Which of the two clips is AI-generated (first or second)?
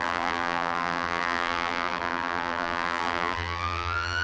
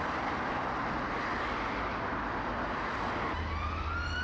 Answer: first